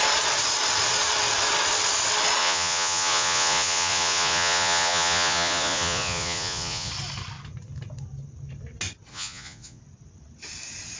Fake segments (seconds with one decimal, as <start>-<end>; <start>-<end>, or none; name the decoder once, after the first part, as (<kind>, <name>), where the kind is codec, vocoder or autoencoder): 2.4-6.9 (vocoder, Vocos); 9.1-9.8